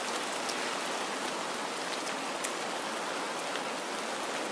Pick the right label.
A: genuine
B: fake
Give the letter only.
A